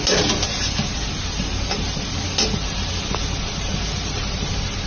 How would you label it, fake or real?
real